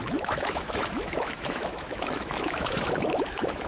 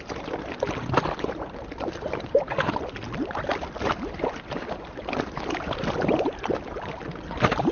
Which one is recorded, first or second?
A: second